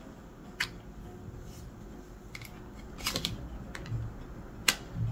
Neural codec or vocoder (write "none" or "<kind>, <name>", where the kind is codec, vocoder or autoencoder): none